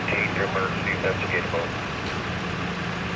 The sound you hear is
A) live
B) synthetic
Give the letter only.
A